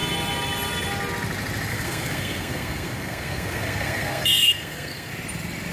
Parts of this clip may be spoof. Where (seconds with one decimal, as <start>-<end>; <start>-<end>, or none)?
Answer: 1.7-5.1